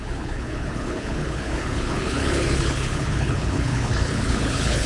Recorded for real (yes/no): no